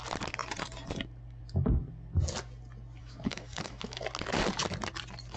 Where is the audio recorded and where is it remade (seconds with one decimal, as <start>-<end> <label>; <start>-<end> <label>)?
0.0-3.0 recorded; 3.0-4.0 remade; 4.0-5.4 recorded